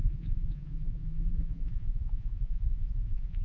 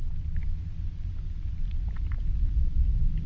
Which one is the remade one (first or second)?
first